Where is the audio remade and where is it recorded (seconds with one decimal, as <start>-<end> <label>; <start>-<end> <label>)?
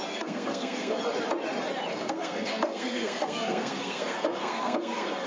0.0-1.0 remade; 1.0-1.9 recorded; 1.9-5.3 remade